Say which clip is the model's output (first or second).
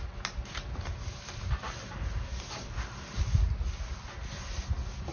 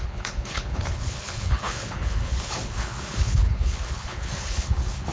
second